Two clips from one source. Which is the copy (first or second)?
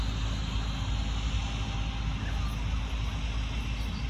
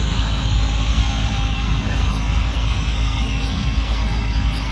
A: second